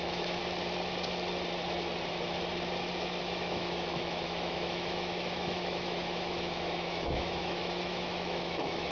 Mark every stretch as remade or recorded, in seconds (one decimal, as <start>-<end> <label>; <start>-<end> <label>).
0.0-0.4 remade; 0.4-3.2 recorded; 3.2-8.9 remade